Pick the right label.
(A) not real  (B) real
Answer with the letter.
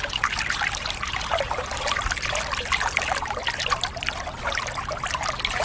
B